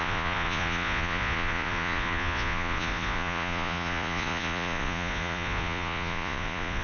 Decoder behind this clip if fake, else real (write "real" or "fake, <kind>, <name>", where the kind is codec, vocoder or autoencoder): fake, vocoder, Vocos